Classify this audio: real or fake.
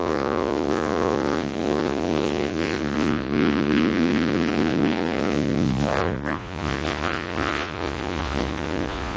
fake